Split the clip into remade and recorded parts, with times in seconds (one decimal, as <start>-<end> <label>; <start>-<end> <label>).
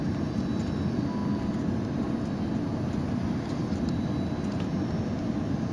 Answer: 0.0-5.7 recorded